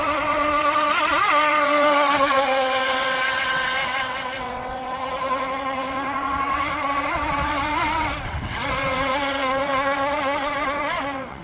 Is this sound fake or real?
fake